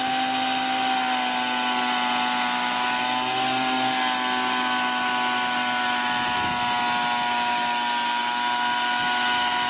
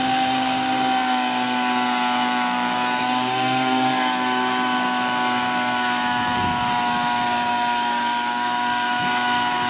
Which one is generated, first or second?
second